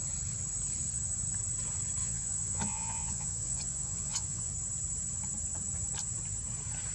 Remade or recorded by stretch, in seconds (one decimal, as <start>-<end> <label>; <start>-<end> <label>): 0.0-2.0 recorded; 2.0-4.5 remade; 4.5-6.9 recorded